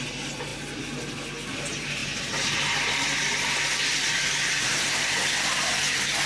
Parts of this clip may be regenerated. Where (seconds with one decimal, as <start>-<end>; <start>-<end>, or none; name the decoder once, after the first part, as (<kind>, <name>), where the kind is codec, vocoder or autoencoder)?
none